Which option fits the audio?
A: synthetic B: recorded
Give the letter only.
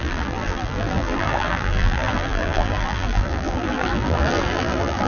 A